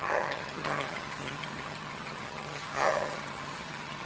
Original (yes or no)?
no